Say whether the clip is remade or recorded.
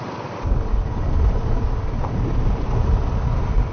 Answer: recorded